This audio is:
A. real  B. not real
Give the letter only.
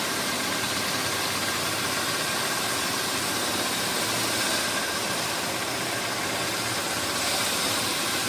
A